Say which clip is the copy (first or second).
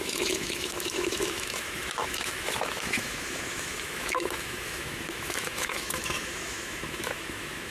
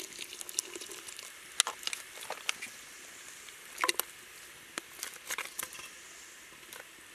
first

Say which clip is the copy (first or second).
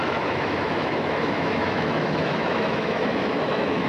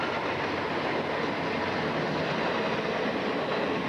first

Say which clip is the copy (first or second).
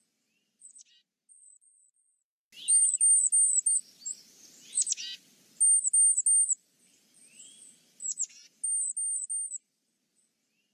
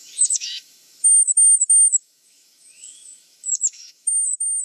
second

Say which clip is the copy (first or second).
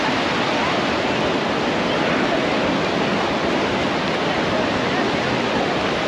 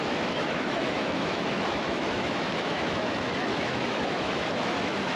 second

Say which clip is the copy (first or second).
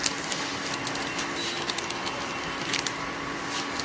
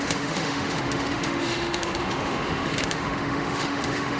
second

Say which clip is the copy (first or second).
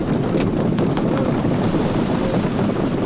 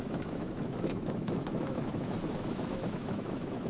second